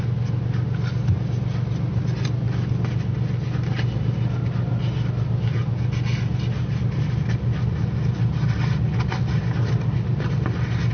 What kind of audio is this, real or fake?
real